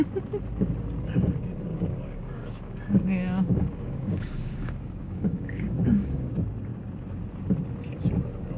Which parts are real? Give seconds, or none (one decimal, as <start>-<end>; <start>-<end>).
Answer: 0.0-1.7; 6.3-8.6